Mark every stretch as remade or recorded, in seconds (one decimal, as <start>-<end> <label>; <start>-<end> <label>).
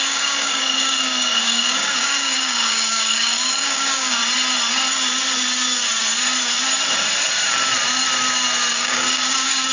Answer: 0.0-4.2 remade; 4.2-8.7 recorded; 8.7-9.7 remade